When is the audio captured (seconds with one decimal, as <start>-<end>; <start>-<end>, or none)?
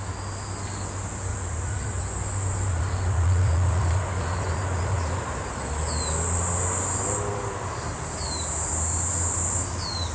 0.0-1.3; 2.0-2.7; 5.5-10.1